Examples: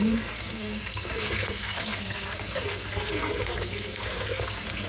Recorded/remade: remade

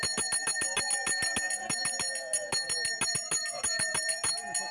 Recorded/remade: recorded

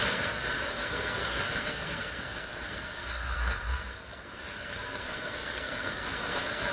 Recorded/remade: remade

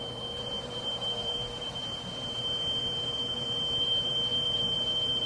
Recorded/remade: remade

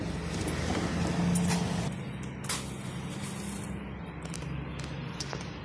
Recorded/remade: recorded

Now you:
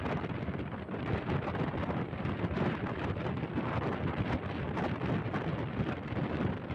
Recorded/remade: remade